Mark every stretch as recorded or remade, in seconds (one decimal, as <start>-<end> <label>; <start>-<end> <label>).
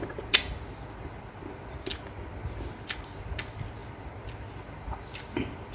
0.0-5.7 recorded